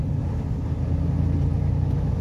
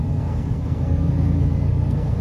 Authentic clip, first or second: first